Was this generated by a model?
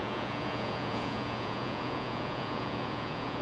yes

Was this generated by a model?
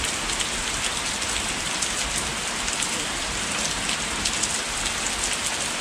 no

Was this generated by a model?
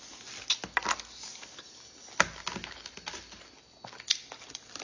no